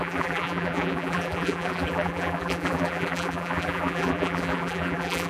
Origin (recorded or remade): remade